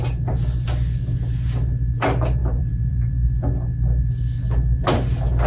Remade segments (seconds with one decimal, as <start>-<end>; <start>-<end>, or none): 2.4-3.1